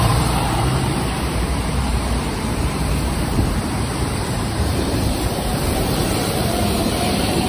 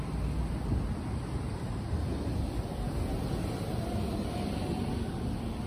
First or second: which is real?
second